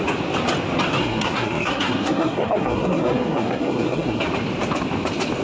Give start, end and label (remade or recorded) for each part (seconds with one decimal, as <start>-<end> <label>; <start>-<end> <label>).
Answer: 0.0-1.0 recorded; 1.0-4.2 remade; 4.2-5.4 recorded